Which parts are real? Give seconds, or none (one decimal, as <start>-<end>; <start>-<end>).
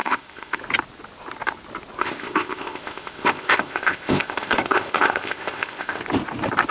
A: 0.6-2.0; 6.0-6.7